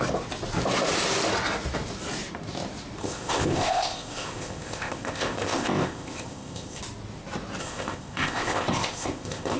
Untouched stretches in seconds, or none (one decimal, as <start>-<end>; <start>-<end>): 0.0-3.0; 6.8-7.6